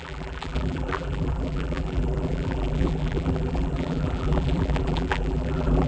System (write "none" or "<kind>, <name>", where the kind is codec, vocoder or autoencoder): vocoder, BigVGAN v2